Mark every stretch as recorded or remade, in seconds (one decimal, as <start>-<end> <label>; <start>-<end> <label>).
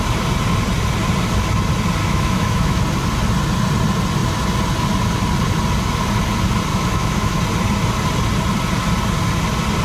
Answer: 0.0-2.0 recorded; 2.0-2.8 remade; 2.8-6.7 recorded; 6.7-7.4 remade; 7.4-9.8 recorded